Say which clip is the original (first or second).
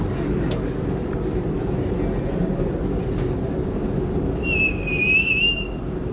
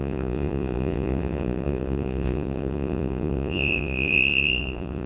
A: first